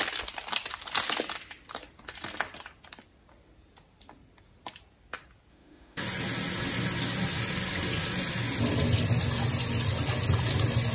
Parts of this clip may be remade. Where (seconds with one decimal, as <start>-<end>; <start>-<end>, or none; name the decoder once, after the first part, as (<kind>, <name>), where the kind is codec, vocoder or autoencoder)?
5.5-6.0 (autoencoder, DAC-VAE)